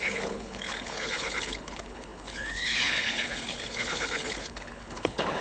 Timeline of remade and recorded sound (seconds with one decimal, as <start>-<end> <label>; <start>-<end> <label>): 0.0-5.4 remade